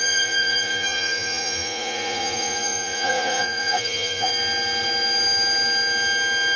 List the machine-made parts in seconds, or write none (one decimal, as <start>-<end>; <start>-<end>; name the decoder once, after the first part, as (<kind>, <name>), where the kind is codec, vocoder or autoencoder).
0.0-4.3 (vocoder, Vocos)